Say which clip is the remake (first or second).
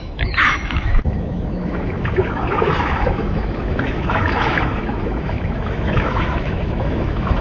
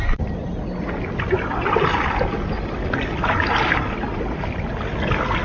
first